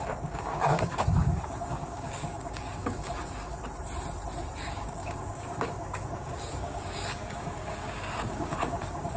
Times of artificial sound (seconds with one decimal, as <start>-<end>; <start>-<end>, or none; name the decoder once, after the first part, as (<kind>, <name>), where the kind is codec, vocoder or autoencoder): 0.0-3.5 (codec, DAC); 4.6-9.2